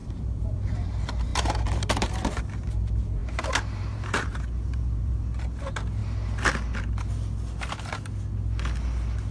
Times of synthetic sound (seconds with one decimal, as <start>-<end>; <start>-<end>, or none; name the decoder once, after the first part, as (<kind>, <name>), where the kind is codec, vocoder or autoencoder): 0.0-0.9 (vocoder, BigVGAN v2); 1.3-2.3; 3.2-5.6

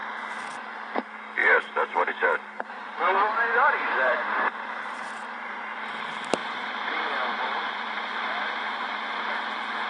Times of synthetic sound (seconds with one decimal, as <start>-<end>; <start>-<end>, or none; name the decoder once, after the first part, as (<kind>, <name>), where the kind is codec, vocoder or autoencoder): 1.4-5.6 (vocoder, BigVGAN v2); 6.4-9.2

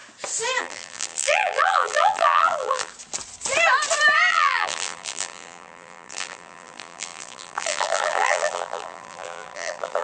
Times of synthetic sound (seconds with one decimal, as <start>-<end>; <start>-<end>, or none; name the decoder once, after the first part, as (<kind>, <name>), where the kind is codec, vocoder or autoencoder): 0.6-2.9 (vocoder, BigVGAN v2); 4.3-10.0

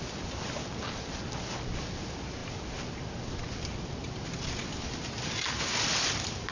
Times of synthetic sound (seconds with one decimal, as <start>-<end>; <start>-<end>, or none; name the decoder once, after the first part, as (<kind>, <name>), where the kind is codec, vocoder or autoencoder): none

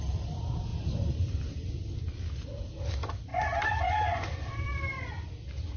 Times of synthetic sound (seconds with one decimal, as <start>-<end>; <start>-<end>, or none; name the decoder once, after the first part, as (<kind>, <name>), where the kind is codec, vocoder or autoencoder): 0.7-1.7 (vocoder, BigVGAN v2); 3.3-5.1

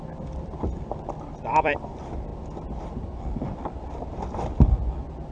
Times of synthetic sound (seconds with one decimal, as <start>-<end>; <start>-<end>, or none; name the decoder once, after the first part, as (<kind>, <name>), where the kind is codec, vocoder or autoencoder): 0.0-2.3 (vocoder, BigVGAN v2); 3.1-5.3

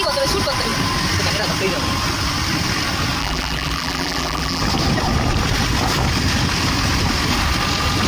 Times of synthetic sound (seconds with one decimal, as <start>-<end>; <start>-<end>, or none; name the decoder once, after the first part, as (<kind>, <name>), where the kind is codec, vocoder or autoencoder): 3.2-4.6 (vocoder, BigVGAN v2)